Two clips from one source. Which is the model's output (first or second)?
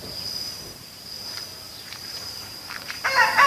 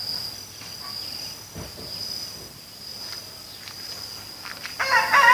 first